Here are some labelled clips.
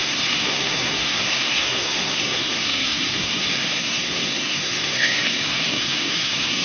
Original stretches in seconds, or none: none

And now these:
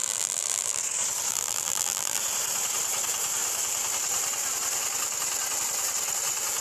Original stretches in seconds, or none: 0.8-1.3; 2.2-6.6

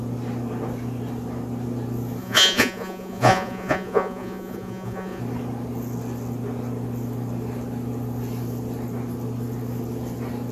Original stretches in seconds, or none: 0.0-2.2; 5.2-10.5

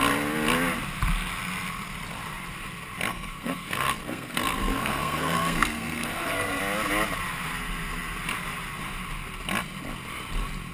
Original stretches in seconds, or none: 0.0-3.1; 6.6-10.7

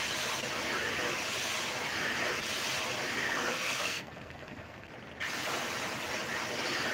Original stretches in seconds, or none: 0.0-3.2; 4.9-6.9

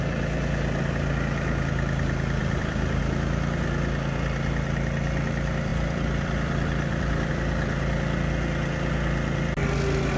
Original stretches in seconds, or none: 0.0-2.4; 3.0-5.7; 7.3-10.2

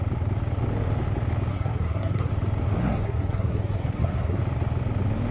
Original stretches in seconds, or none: 0.0-1.5; 2.3-2.8; 4.4-5.3